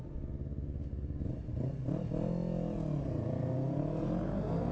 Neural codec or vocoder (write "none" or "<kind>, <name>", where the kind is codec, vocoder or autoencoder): none